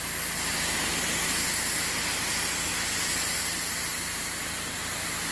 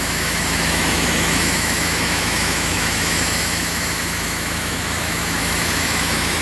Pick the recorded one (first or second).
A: first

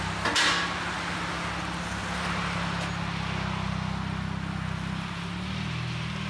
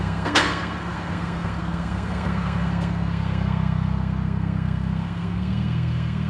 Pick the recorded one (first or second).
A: first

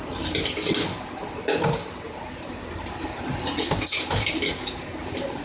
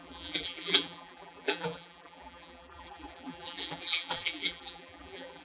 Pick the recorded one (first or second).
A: first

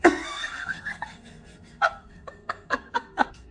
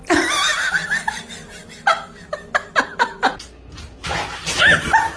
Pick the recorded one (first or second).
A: second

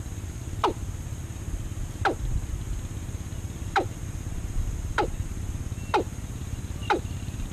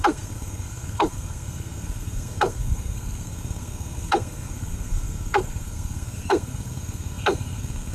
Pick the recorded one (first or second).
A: first